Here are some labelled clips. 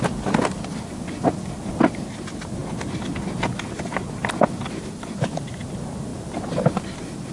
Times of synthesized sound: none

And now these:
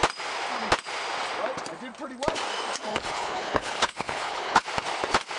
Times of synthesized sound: 2.9-4.6 (codec, HILCodec)

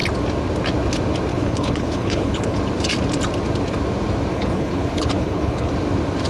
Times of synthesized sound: 1.3-2.6 (codec, HILCodec); 4.3-5.7

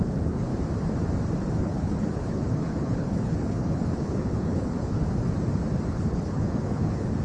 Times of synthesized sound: 0.0-0.5 (codec, HILCodec); 1.6-5.0; 5.9-7.2

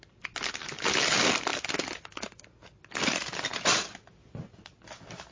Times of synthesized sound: none